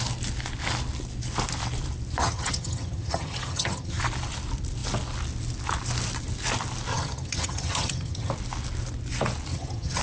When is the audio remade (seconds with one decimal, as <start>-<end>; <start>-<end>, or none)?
2.2-4.0; 6.9-8.3; 9.5-10.0